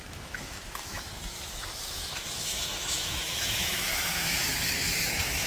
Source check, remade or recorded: remade